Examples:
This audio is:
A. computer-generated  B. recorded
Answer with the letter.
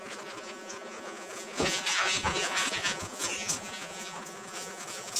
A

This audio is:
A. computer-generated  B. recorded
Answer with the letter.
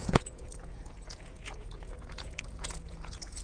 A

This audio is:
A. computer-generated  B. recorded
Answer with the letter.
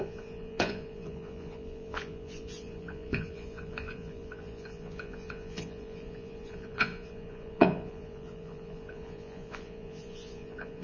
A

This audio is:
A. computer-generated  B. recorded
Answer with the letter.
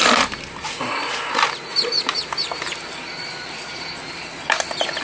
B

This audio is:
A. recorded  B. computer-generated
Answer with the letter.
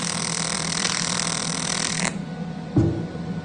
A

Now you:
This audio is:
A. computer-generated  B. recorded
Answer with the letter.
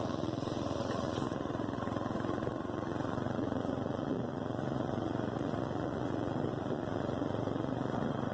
A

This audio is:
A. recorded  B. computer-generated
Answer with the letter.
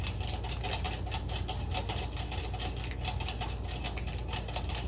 A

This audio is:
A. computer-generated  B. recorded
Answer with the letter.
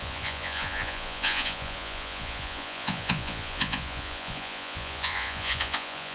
A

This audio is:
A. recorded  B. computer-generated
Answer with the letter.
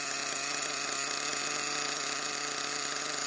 A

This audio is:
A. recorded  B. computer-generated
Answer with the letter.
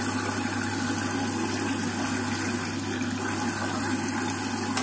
A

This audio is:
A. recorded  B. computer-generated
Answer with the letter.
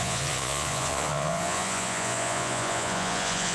B